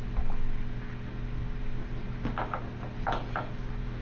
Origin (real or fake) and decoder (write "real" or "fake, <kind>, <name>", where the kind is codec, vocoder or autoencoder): real